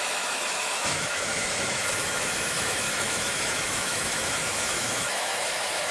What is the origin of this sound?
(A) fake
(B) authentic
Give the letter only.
A